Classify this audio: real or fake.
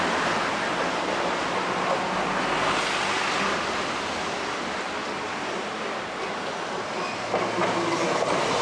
real